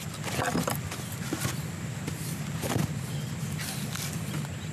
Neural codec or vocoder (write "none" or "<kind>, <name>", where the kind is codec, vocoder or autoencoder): none